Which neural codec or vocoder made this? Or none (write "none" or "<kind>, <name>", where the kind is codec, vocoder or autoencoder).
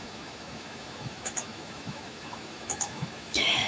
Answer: autoencoder, DAC-VAE